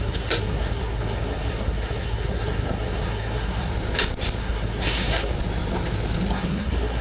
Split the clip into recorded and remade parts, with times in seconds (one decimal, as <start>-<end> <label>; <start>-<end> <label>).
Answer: 0.0-3.7 remade; 3.7-4.4 recorded; 4.4-5.3 remade; 5.3-6.3 recorded; 6.3-7.0 remade